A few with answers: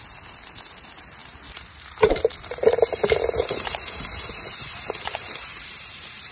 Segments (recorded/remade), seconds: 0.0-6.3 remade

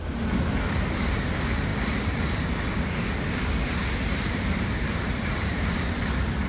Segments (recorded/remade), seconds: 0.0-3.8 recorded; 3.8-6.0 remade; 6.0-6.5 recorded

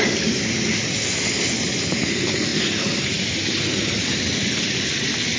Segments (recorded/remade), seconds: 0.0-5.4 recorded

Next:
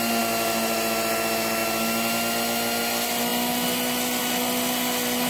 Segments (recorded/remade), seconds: 0.0-5.3 recorded

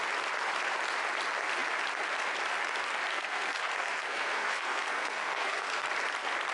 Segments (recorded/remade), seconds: 0.0-3.1 recorded; 3.1-5.9 remade; 5.9-6.5 recorded

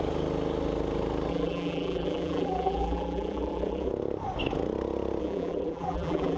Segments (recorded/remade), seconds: 0.0-1.3 recorded; 1.3-3.9 remade; 3.9-5.2 recorded; 5.2-6.4 remade